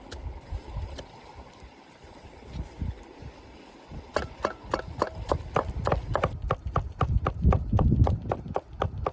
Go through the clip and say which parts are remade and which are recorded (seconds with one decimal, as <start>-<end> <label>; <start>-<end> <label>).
0.0-9.1 recorded